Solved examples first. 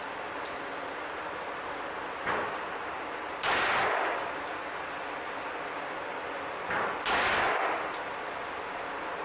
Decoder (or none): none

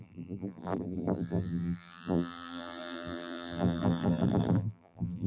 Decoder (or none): vocoder, BigVGAN v2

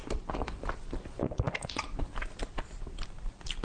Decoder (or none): none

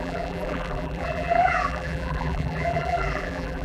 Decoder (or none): vocoder, BigVGAN v2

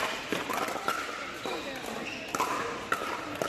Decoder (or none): none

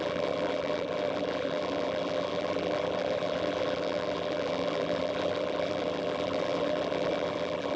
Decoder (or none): vocoder, BigVGAN v2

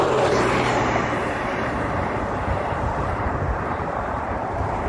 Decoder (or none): vocoder, BigVGAN v2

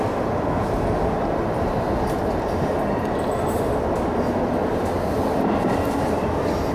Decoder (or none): none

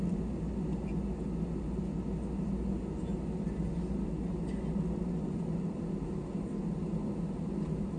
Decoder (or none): none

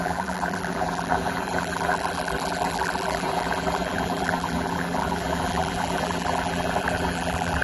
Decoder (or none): vocoder, BigVGAN v2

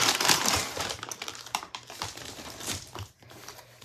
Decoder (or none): vocoder, BigVGAN v2